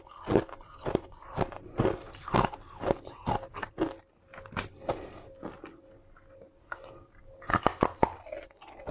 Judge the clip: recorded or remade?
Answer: recorded